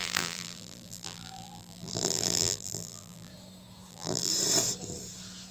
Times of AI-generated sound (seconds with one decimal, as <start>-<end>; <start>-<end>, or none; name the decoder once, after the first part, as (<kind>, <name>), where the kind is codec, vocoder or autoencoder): 0.0-3.3 (vocoder, BigVGAN v2); 3.9-4.3